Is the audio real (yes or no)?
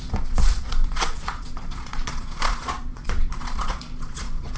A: no